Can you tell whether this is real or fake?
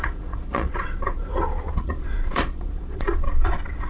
fake